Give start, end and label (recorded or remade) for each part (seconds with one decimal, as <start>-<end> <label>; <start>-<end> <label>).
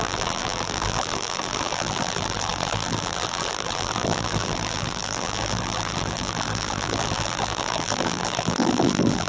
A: 0.0-9.3 remade